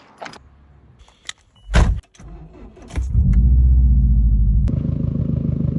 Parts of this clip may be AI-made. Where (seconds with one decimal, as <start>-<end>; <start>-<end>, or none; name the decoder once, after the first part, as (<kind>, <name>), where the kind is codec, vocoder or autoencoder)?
4.6-5.2 (vocoder, Vocos)